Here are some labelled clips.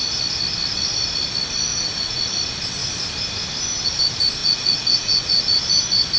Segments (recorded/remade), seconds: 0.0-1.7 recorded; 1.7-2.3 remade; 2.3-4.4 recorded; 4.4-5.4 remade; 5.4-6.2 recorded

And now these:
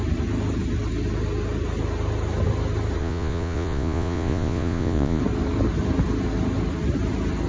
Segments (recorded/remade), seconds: 0.0-3.0 recorded; 3.0-5.2 remade; 5.2-7.5 recorded

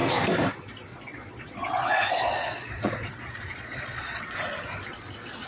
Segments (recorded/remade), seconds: 0.0-0.9 recorded; 0.9-4.2 remade; 4.2-5.5 recorded